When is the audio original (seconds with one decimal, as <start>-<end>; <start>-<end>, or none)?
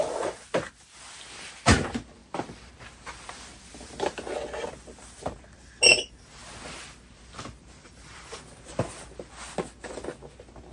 0.0-5.9; 6.4-7.8; 8.4-10.7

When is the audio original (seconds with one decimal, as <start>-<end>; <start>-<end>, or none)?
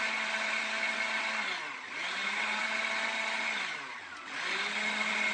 0.0-2.2; 2.8-5.3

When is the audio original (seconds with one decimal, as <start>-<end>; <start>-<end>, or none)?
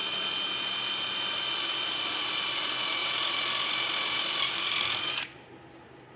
0.0-6.2